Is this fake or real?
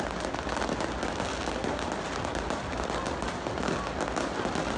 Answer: real